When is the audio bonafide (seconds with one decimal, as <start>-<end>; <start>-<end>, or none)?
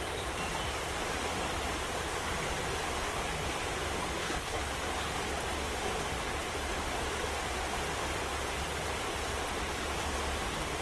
0.0-4.2; 4.7-10.8